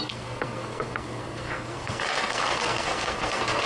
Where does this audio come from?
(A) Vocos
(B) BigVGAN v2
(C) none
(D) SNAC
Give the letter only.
D